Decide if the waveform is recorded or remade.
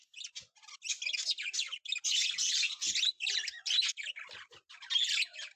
recorded